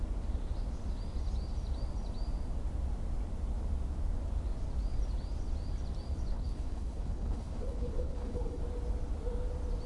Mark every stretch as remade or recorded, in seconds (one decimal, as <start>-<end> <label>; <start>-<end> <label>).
0.0-6.3 recorded; 6.3-8.6 remade; 8.6-9.9 recorded